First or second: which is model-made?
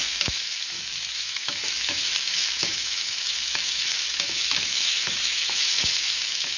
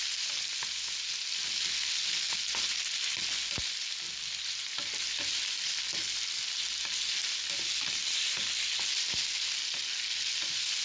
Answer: first